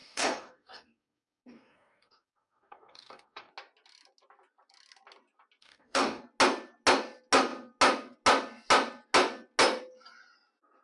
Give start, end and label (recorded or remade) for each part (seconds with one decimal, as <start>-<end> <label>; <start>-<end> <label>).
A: 0.0-3.5 remade; 3.5-5.6 recorded; 5.6-6.2 remade; 6.2-10.8 recorded